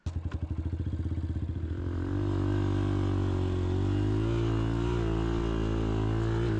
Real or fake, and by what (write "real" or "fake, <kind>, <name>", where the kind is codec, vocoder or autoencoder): real